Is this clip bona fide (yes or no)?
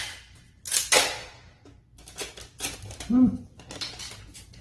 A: yes